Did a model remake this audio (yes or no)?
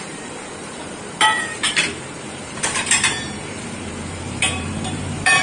yes